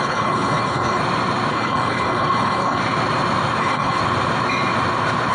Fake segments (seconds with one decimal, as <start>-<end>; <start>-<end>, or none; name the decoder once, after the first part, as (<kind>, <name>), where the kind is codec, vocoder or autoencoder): 0.0-1.0 (codec, HILCodec); 1.5-2.8; 3.6-4.0